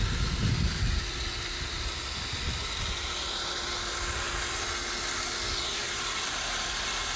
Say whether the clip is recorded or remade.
recorded